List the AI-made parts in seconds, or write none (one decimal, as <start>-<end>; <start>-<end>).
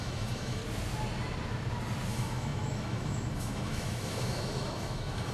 0.0-0.6; 2.1-5.3